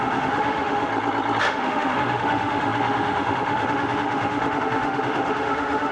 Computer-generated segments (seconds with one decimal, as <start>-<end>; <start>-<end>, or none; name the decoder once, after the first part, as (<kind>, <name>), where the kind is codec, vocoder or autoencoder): 0.0-0.9 (autoencoder, DAC-VAE); 1.4-5.9